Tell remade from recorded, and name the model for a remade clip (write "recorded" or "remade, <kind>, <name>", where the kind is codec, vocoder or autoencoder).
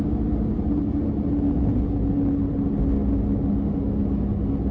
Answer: recorded